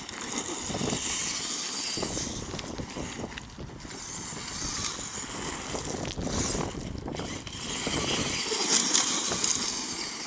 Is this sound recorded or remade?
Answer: recorded